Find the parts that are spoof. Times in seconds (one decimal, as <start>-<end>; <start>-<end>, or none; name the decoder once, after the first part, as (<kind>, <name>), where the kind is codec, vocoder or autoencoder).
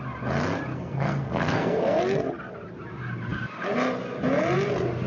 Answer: 0.7-2.0 (codec, SNAC)